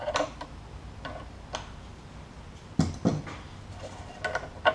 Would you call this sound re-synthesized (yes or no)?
no